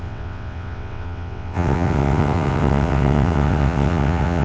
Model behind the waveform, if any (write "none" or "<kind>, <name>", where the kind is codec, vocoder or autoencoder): vocoder, WaveNeXt